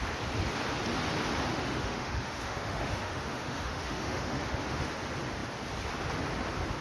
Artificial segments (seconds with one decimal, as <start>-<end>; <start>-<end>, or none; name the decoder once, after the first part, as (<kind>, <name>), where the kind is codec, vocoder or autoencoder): 1.5-4.9 (autoencoder, DAC-VAE)